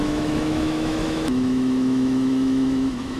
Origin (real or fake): fake